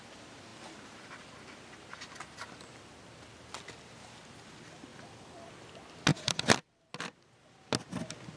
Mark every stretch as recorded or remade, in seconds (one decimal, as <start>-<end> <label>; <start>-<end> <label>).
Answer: 0.0-4.9 recorded; 4.9-5.5 remade; 5.5-6.1 recorded; 6.1-6.9 remade; 6.9-8.4 recorded